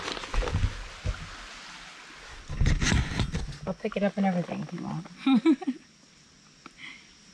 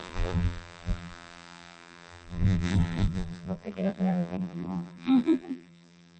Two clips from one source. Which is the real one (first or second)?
first